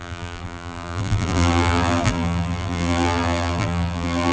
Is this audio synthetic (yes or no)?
yes